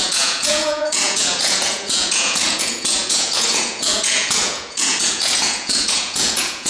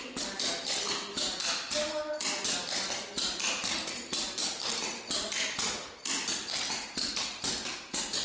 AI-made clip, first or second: first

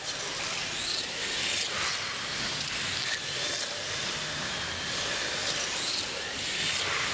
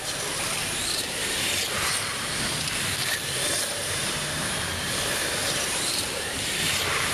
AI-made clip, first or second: second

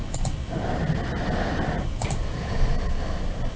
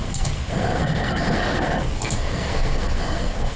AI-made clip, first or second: second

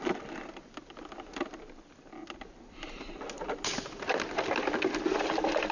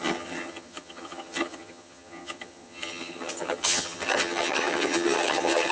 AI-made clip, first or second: second